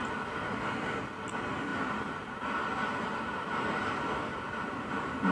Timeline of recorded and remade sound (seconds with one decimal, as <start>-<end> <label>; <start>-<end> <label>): 0.0-1.7 recorded; 1.7-5.3 remade